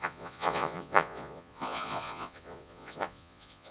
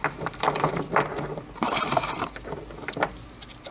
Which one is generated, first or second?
first